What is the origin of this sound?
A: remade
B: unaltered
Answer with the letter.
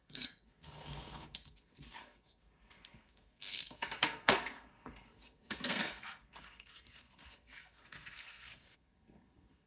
A